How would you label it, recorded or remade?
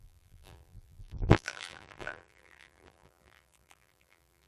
remade